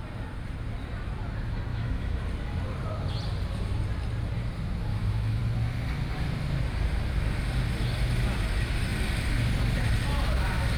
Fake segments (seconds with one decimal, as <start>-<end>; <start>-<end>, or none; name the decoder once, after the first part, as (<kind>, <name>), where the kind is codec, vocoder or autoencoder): 1.7-2.2 (autoencoder, DAC-VAE); 4.9-5.4